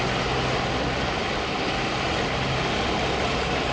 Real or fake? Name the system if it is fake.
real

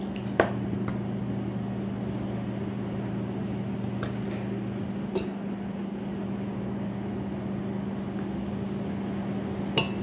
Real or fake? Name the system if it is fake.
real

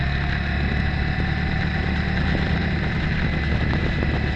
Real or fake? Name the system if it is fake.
real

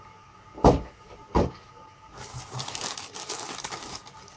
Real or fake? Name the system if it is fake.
fake, codec, DAC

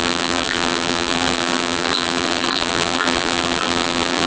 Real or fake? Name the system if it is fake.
fake, vocoder, BigVGAN v2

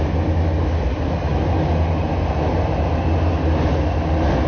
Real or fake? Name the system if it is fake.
real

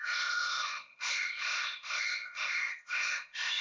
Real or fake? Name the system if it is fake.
fake, codec, ZipCodec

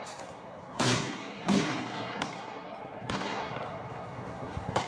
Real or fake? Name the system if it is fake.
fake, codec, SNAC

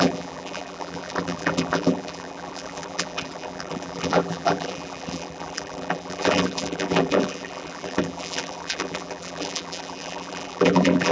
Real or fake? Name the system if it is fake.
fake, vocoder, BigVGAN v2